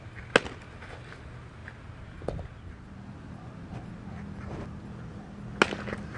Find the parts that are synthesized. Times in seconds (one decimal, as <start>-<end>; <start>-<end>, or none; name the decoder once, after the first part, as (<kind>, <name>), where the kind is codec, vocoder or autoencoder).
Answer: none